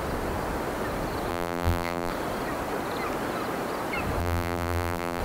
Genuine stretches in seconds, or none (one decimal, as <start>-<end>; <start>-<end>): 0.0-1.3; 2.1-4.2